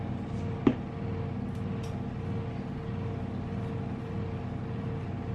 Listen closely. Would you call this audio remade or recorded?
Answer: recorded